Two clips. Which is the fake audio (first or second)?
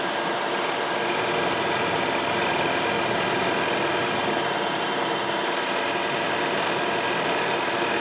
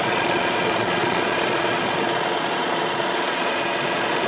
second